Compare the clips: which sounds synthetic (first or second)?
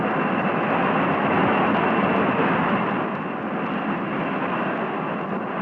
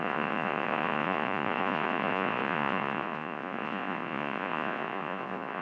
second